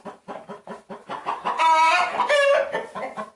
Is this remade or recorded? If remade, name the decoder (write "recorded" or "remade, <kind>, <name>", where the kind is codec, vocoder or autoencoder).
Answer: remade, vocoder, BigVGAN v2